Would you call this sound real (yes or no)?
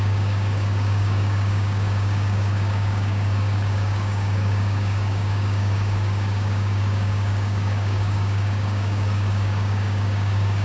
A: no